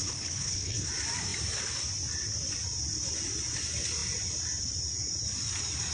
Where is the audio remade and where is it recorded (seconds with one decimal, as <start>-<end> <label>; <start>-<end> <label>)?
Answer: 0.0-0.9 remade; 0.9-5.9 recorded